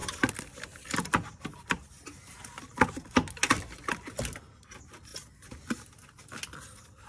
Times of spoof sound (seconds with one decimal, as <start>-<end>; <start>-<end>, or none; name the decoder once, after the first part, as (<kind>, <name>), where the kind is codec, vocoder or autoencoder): none